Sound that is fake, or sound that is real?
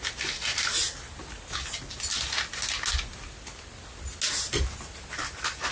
real